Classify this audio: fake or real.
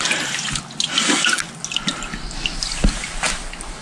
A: real